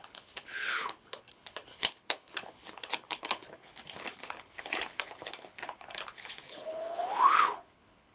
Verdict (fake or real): fake